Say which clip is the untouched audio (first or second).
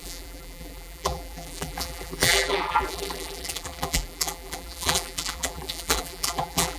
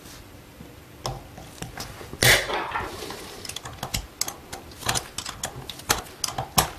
second